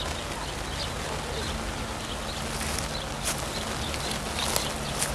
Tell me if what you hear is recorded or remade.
recorded